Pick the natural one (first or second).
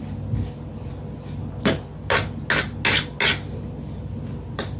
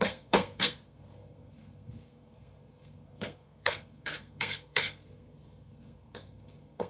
first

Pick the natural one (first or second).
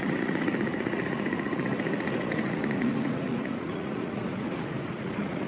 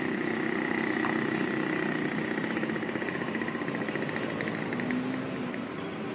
second